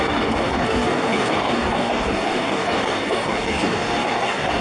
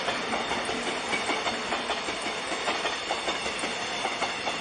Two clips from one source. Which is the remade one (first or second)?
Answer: first